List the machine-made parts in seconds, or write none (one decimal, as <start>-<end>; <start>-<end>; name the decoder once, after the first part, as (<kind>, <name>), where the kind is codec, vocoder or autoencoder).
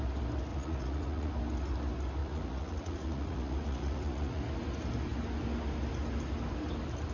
0.5-1.3 (vocoder, Vocos); 2.2-4.4